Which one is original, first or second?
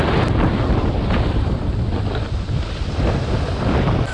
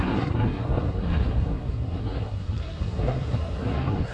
first